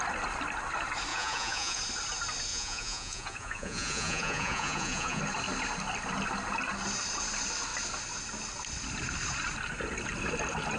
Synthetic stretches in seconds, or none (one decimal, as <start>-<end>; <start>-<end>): 1.1-1.8; 2.5-5.2